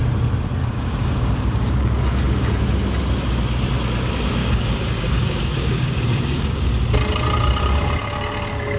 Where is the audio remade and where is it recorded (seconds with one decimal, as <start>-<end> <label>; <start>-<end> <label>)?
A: 0.0-0.6 recorded; 0.6-2.5 remade; 2.5-4.4 recorded; 4.4-6.7 remade; 6.7-8.8 recorded